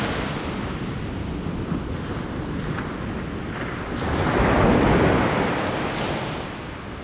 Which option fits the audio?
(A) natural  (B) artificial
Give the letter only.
A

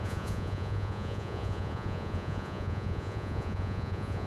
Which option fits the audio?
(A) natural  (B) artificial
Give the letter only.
B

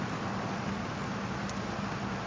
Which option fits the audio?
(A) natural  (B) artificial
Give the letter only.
A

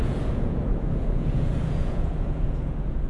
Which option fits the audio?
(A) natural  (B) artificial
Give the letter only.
B